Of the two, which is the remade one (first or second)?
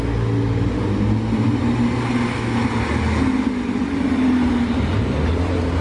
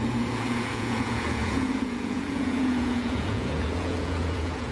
second